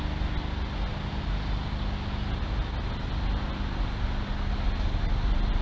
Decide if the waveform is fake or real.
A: real